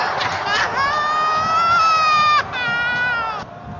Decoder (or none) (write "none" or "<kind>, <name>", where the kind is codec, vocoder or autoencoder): none